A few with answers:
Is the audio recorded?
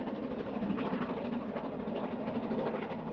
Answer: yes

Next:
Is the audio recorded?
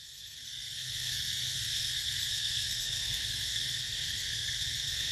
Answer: no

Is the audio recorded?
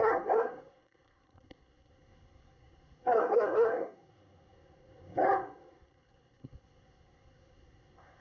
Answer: no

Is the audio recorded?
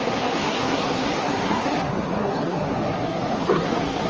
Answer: no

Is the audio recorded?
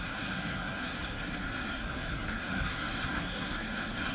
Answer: no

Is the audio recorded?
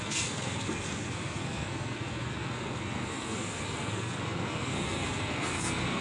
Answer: no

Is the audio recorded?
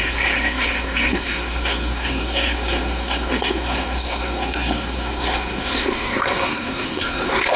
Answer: no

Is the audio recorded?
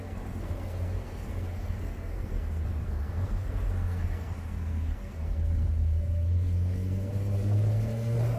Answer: no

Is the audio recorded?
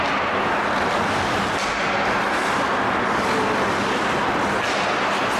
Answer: yes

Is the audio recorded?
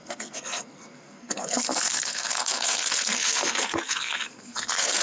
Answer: no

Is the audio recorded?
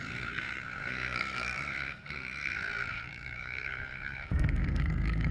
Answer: no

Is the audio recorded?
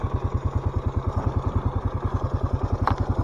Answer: yes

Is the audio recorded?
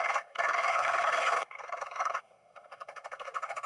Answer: no